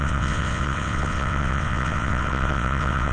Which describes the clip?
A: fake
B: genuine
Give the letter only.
A